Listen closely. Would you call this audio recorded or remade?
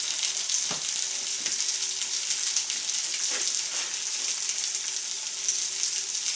recorded